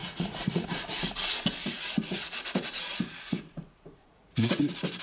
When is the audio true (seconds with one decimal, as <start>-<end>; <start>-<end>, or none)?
1.0-1.6; 4.6-5.0